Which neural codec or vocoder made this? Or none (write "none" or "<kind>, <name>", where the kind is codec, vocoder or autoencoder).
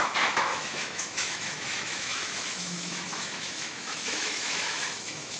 autoencoder, DAC-VAE